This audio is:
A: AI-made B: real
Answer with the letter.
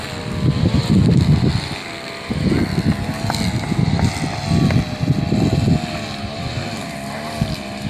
B